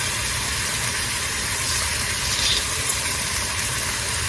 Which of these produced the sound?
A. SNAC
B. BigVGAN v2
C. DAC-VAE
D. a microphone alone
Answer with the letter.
B